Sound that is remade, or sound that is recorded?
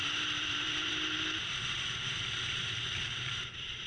remade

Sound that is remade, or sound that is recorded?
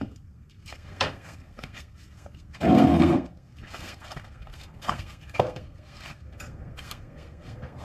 remade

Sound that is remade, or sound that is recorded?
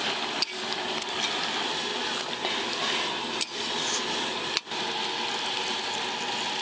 recorded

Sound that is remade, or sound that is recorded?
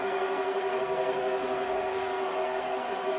remade